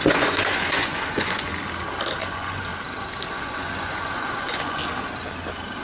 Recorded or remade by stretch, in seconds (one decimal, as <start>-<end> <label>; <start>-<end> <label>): 0.0-1.5 remade; 1.5-2.2 recorded; 2.2-2.7 remade; 2.7-3.3 recorded; 3.3-4.8 remade; 4.8-5.8 recorded